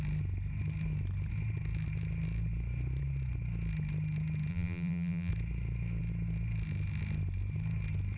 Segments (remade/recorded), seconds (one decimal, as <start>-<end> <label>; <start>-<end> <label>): 0.0-4.5 recorded; 4.5-5.3 remade; 5.3-8.2 recorded